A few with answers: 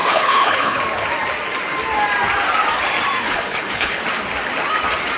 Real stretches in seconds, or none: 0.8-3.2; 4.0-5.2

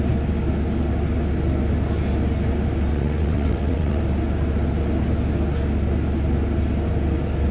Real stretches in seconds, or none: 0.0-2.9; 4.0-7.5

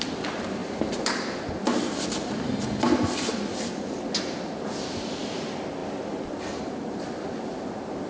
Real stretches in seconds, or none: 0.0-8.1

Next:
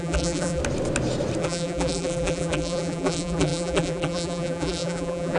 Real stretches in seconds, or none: 0.6-1.4

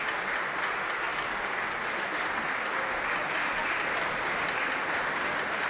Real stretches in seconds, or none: 0.0-5.7